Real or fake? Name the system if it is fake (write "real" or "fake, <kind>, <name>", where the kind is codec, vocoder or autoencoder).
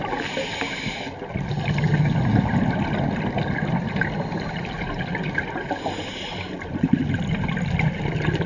real